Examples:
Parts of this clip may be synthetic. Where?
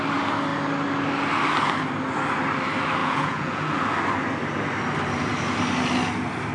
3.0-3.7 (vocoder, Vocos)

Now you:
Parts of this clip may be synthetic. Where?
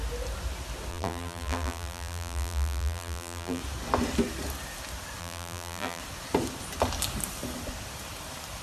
0.9-3.6 (vocoder, BigVGAN v2); 5.2-6.0